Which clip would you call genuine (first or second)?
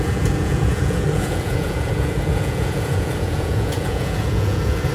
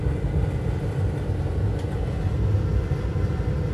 second